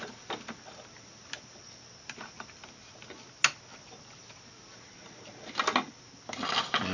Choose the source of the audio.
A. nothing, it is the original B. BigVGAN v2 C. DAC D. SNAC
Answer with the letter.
A